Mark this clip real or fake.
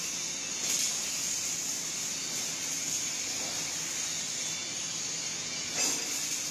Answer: real